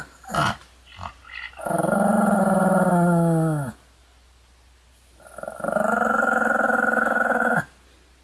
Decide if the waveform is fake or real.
real